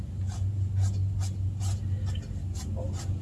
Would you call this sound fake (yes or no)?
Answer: no